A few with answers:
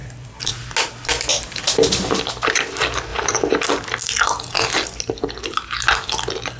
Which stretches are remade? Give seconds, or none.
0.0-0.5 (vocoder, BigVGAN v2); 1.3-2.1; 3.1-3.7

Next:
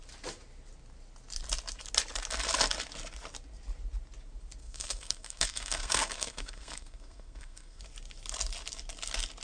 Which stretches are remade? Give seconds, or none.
4.6-7.8 (codec, SNAC)

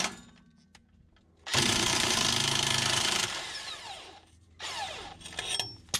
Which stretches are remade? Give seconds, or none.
1.5-5.1 (vocoder, BigVGAN v2)